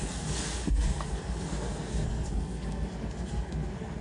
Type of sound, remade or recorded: remade